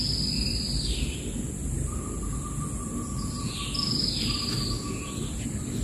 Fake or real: real